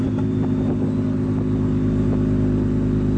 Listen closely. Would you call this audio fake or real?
real